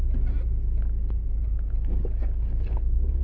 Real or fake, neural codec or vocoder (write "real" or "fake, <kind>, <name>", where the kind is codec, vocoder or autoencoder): real